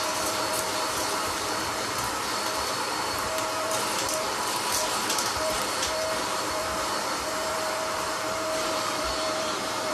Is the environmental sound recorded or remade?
remade